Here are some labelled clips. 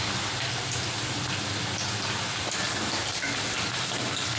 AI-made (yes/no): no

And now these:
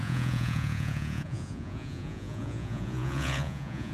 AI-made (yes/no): yes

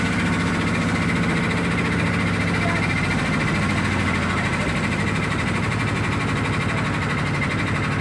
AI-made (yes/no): no